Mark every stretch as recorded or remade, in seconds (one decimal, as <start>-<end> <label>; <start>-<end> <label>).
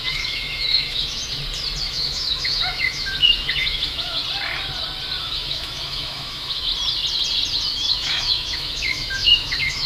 0.0-1.2 remade; 1.2-1.8 recorded; 1.8-4.2 remade; 4.2-5.2 recorded; 5.2-6.7 remade; 6.7-7.7 recorded; 7.7-9.9 remade